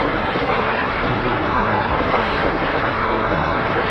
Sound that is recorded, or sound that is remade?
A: remade